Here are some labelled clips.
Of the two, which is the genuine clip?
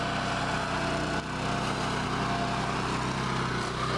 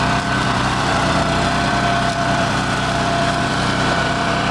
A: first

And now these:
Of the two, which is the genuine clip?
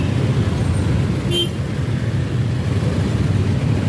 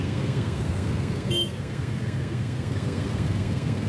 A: first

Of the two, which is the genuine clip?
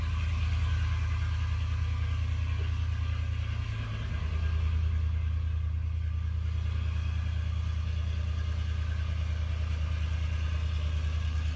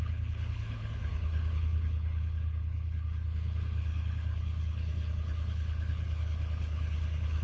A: first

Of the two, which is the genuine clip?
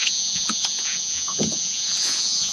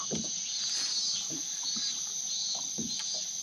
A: second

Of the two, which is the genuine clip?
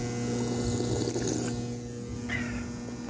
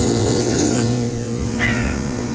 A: first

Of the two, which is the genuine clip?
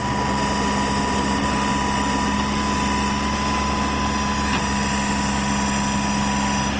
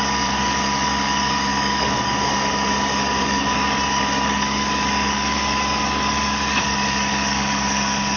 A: first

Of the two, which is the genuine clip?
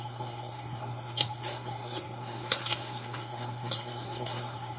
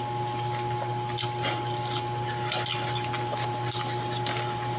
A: second